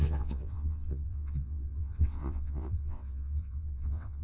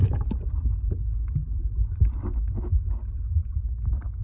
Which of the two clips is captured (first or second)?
second